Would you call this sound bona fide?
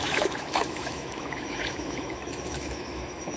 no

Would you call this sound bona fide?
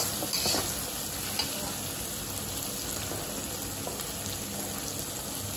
yes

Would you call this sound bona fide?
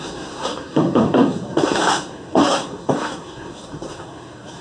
no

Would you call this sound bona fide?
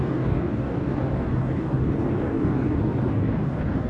no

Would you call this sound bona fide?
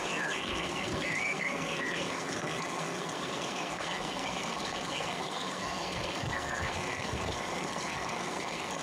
no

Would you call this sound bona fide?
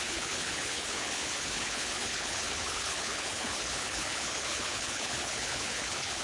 no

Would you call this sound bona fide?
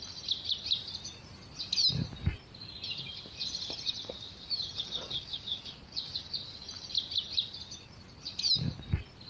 yes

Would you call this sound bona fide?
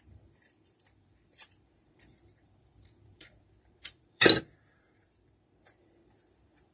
no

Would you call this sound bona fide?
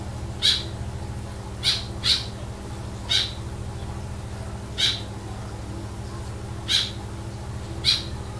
yes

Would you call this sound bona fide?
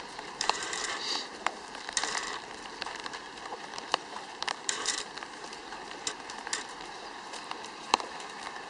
no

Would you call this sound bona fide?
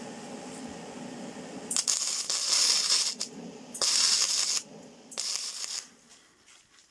yes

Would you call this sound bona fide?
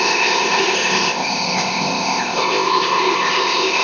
no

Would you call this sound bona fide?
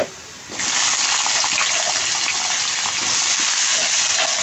yes